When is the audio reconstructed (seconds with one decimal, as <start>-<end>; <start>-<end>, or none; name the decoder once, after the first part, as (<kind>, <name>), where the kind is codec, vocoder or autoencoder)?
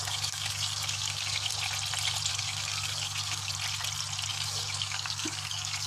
0.0-1.5 (codec, DAC); 2.3-3.5; 4.3-5.9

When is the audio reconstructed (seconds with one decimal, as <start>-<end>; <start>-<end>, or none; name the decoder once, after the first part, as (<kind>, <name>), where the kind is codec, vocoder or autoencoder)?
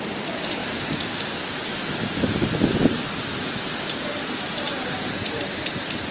none